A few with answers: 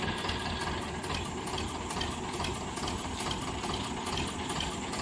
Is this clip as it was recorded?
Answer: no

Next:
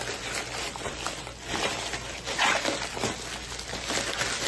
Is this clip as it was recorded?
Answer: yes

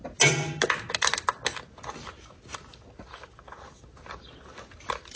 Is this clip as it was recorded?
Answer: yes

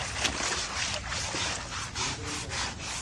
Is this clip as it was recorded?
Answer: yes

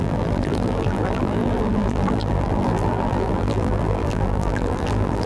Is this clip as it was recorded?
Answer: no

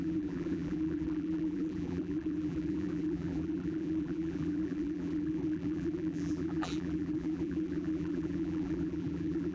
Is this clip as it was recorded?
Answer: no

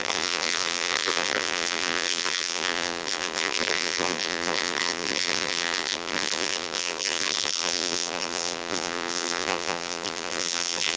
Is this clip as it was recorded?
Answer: no